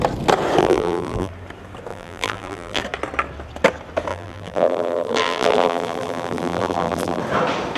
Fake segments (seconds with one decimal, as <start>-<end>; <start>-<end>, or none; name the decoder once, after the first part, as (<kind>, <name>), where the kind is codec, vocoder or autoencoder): 0.6-1.3 (vocoder, BigVGAN v2); 1.9-2.8; 4.1-7.2